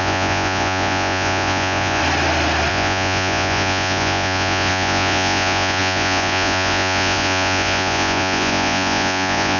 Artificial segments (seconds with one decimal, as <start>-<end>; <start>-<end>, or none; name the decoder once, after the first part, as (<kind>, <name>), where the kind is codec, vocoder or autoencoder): 0.0-2.0 (vocoder, Vocos); 2.7-9.6